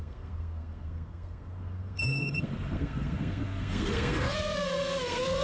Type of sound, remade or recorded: remade